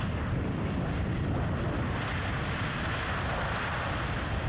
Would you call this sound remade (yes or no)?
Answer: no